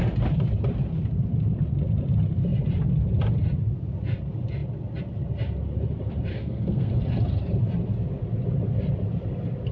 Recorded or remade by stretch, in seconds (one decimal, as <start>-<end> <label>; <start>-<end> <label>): 0.0-6.3 recorded; 6.3-6.9 remade; 6.9-9.7 recorded